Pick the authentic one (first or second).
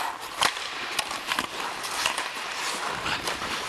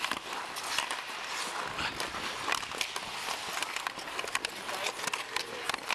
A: second